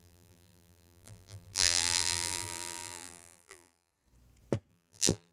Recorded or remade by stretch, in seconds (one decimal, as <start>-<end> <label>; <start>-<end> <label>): 0.0-3.9 remade; 3.9-4.7 recorded; 4.7-5.3 remade

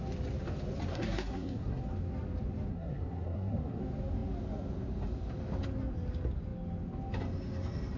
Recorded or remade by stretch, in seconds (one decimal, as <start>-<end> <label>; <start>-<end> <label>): 0.0-0.9 recorded; 0.9-1.8 remade; 1.8-2.7 recorded; 2.7-3.8 remade; 3.8-8.0 recorded